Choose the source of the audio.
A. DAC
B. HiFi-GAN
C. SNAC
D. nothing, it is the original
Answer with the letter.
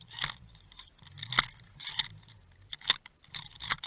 D